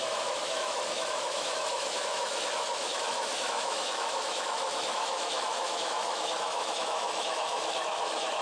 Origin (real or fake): fake